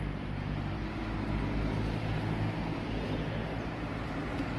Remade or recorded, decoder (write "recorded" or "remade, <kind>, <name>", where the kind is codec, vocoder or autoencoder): recorded